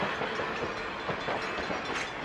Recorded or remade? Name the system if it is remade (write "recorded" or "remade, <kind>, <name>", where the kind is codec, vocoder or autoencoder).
recorded